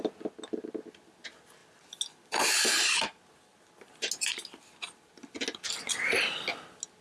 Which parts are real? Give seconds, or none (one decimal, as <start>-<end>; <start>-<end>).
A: 0.0-7.0